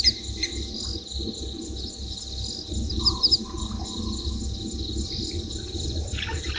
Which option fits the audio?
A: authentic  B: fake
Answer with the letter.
A